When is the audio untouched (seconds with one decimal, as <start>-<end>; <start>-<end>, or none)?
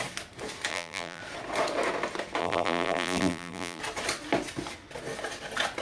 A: 0.0-0.7; 1.2-2.4; 3.8-5.8